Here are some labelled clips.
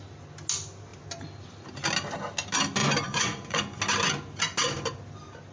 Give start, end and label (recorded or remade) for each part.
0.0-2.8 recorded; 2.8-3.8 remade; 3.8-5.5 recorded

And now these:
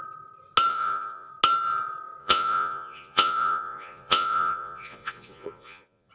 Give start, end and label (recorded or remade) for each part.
0.0-0.7 recorded; 0.7-1.3 remade; 1.3-2.2 recorded; 2.2-6.1 remade

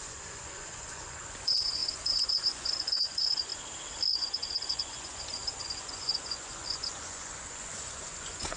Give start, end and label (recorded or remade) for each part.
0.0-3.5 remade; 3.5-4.1 recorded; 4.1-8.6 remade

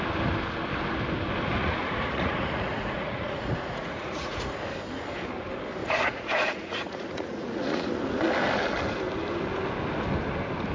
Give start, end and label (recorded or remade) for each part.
0.0-1.6 recorded; 1.6-4.5 remade; 4.5-5.8 recorded; 5.8-7.9 remade; 7.9-10.7 recorded

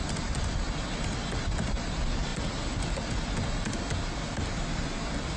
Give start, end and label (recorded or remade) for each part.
0.0-5.4 recorded

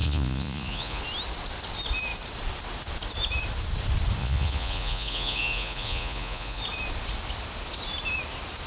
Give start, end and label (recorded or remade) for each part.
0.0-1.0 remade; 1.0-4.2 recorded; 4.2-6.6 remade; 6.6-8.7 recorded

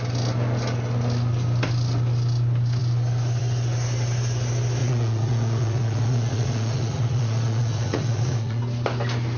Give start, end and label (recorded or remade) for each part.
0.0-4.8 recorded; 4.8-8.6 remade; 8.6-9.4 recorded

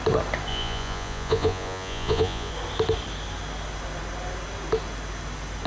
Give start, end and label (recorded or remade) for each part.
0.0-0.5 recorded; 0.5-2.5 remade; 2.5-5.7 recorded